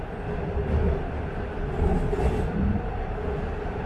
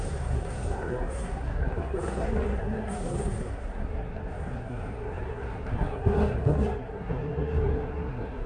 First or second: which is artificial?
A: second